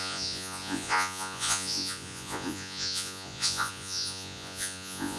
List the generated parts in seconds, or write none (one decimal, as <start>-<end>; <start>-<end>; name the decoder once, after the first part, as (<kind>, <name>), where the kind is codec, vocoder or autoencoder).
0.0-5.2 (vocoder, Vocos)